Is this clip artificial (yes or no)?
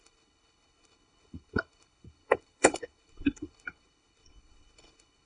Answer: yes